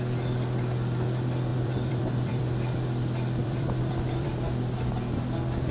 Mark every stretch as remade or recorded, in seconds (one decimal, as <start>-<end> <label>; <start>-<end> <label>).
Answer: 0.0-1.5 recorded; 1.5-2.4 remade; 2.4-3.4 recorded; 3.4-4.3 remade; 4.3-5.7 recorded

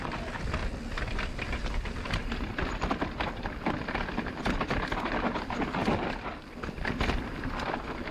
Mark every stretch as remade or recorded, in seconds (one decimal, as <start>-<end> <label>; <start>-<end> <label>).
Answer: 0.0-0.6 remade; 0.6-1.2 recorded; 1.2-5.8 remade; 5.8-6.7 recorded; 6.7-8.1 remade